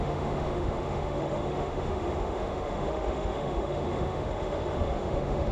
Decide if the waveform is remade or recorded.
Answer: remade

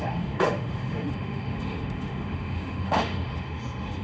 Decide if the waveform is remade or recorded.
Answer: remade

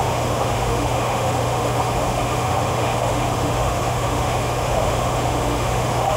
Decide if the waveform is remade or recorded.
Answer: remade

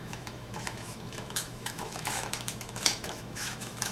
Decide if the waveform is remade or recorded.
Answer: remade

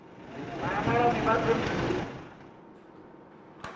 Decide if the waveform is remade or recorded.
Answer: recorded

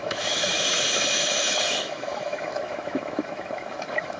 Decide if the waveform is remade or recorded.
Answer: remade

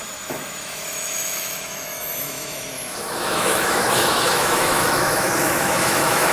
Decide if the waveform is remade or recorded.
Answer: remade